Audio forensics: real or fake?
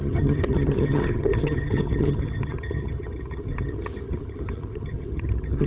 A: fake